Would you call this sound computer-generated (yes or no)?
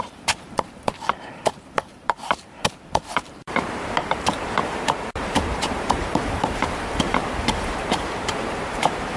yes